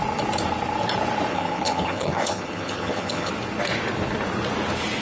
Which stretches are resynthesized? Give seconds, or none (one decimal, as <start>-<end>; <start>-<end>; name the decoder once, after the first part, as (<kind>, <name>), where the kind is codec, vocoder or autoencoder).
1.3-3.3 (vocoder, HiFi-GAN)